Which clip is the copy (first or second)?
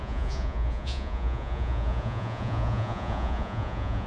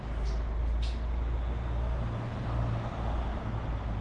first